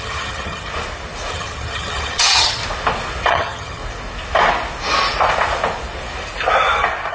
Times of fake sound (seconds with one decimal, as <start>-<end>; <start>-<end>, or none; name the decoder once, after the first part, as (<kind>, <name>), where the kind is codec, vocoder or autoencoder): 0.0-0.7 (vocoder, HiFi-GAN); 1.3-2.6; 3.3-3.8